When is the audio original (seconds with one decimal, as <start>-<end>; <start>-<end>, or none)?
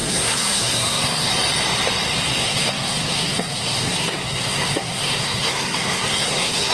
1.3-2.4